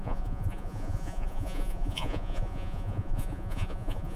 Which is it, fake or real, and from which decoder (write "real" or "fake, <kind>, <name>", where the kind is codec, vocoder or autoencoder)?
fake, vocoder, Vocos